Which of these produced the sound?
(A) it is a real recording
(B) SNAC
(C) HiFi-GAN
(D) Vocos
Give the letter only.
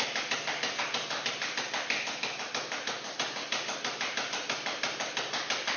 A